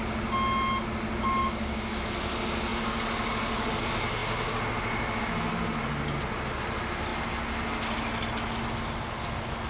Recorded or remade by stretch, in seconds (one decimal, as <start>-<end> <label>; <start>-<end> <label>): 0.0-1.4 recorded; 1.4-2.0 remade; 2.0-9.7 recorded